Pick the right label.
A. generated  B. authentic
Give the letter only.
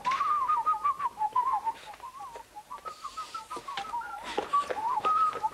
A